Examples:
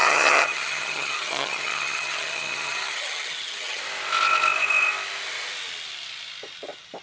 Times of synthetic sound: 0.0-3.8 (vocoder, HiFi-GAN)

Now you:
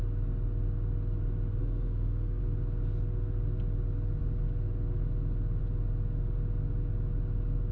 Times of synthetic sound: 1.6-2.4 (codec, SNAC)

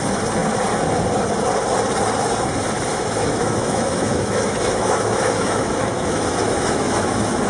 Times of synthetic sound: 2.9-7.5 (autoencoder, DAC-VAE)

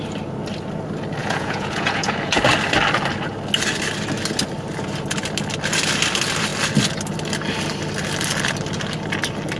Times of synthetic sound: 1.2-2.4 (vocoder, Vocos)